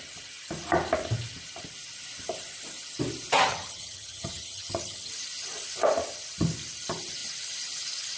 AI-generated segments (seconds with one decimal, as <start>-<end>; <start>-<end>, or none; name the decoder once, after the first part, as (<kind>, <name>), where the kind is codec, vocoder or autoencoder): 3.5-5.1 (vocoder, HiFi-GAN)